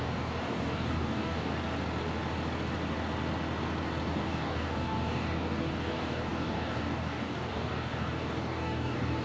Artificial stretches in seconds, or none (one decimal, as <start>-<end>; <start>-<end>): 0.0-1.5; 4.1-9.2